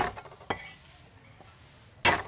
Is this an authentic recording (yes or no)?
yes